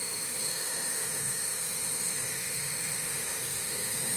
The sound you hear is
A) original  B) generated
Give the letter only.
B